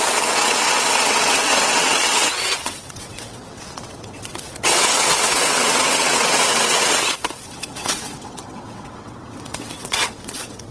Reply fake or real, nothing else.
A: fake